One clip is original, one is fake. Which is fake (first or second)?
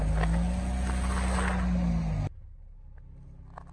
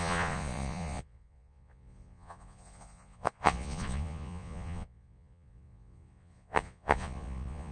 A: second